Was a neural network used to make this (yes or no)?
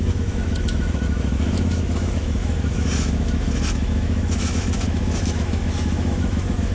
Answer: yes